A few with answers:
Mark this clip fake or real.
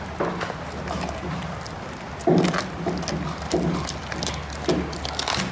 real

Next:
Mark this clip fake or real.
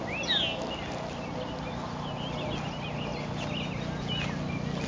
real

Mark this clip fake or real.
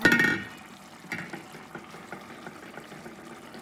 real